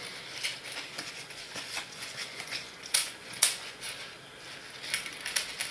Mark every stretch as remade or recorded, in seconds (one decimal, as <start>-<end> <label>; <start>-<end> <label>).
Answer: 0.0-0.9 recorded; 0.9-3.9 remade; 3.9-5.7 recorded